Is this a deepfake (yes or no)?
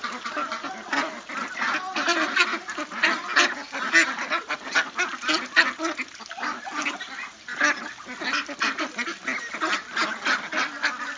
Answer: no